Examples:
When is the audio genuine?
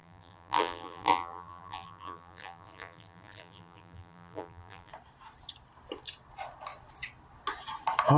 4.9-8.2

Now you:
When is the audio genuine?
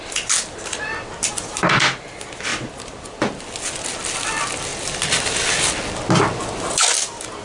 0.0-2.5; 3.4-7.4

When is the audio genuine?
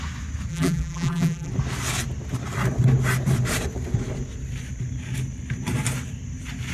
0.0-0.5; 1.5-6.7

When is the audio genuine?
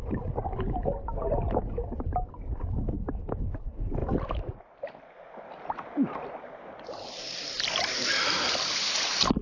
0.0-9.4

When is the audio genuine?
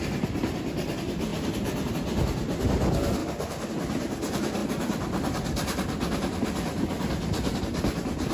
0.0-3.2; 3.7-8.3